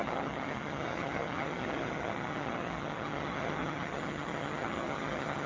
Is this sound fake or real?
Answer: fake